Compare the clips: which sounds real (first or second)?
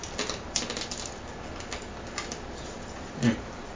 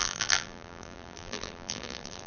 first